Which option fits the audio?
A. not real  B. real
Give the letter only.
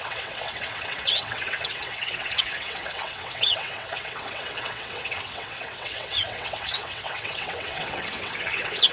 A